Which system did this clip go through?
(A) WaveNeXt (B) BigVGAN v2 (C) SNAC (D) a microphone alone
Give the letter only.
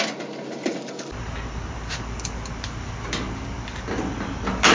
D